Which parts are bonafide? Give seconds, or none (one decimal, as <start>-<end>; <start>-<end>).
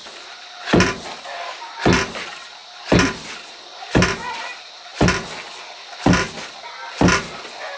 0.0-7.8